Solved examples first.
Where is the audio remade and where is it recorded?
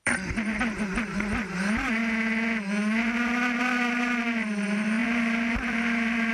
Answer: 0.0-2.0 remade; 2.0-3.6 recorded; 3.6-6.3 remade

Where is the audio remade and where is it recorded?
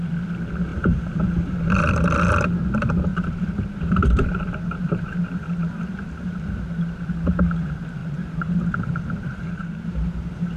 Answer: 0.0-0.7 recorded; 0.7-1.9 remade; 1.9-3.1 recorded; 3.1-7.1 remade; 7.1-8.0 recorded; 8.0-10.6 remade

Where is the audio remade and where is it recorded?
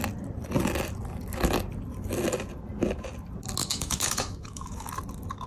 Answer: 0.0-3.6 recorded; 3.6-4.9 remade; 4.9-5.5 recorded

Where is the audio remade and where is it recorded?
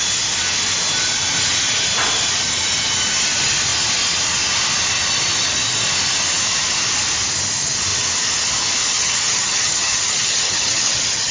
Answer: 0.0-8.9 recorded; 8.9-11.3 remade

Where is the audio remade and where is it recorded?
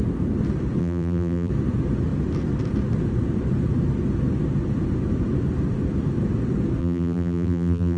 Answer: 0.0-0.8 recorded; 0.8-1.5 remade; 1.5-6.8 recorded; 6.8-8.0 remade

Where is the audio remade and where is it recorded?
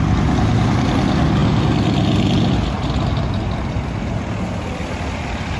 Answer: 0.0-5.6 recorded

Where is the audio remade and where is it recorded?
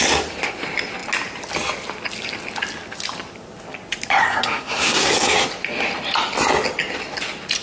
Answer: 0.0-4.2 recorded; 4.2-5.1 remade; 5.1-7.6 recorded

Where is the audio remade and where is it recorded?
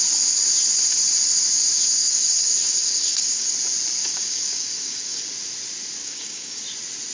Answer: 0.0-2.0 recorded; 2.0-3.5 remade; 3.5-4.0 recorded; 4.0-5.2 remade; 5.2-6.0 recorded; 6.0-6.6 remade; 6.6-7.1 recorded